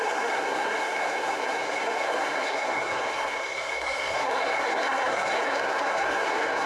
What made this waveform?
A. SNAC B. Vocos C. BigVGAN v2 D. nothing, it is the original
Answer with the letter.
A